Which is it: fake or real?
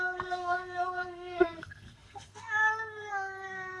fake